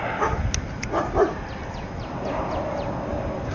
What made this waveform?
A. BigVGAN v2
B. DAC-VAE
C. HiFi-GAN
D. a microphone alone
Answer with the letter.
D